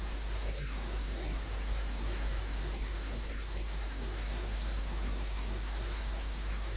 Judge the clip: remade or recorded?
remade